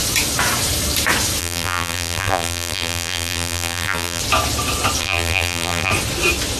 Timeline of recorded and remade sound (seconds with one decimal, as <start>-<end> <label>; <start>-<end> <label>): 0.0-1.4 recorded; 1.4-4.2 remade; 4.2-5.0 recorded; 5.0-5.9 remade; 5.9-6.6 recorded